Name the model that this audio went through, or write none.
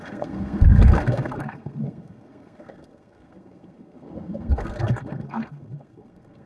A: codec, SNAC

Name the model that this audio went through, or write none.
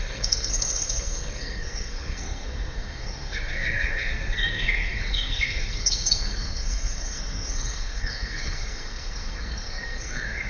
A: codec, SNAC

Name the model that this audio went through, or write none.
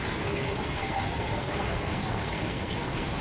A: codec, SNAC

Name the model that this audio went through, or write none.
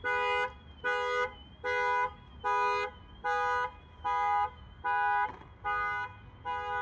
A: none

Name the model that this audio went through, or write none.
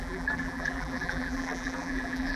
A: vocoder, BigVGAN v2